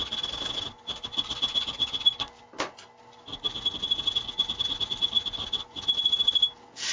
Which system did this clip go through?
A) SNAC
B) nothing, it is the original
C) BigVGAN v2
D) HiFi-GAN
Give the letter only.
B